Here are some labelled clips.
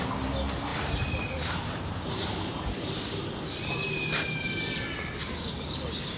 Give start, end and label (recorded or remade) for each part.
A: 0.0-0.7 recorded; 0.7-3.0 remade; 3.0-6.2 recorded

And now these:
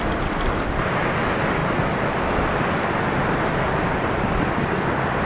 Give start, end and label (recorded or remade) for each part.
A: 0.0-5.2 recorded

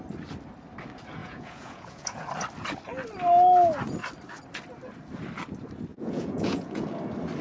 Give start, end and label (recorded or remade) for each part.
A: 0.0-1.2 recorded; 1.2-2.3 remade; 2.3-5.9 recorded; 5.9-6.9 remade; 6.9-7.4 recorded

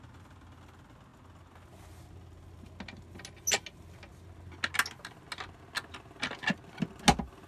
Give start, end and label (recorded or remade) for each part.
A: 0.0-7.5 recorded

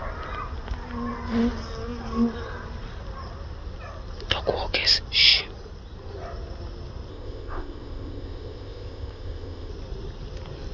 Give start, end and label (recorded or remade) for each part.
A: 0.0-7.1 recorded; 7.1-9.7 remade; 9.7-10.7 recorded